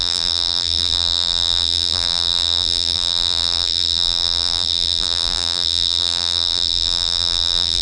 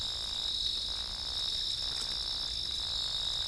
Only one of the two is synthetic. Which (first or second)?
first